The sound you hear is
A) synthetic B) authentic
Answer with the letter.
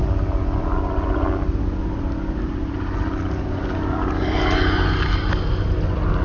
B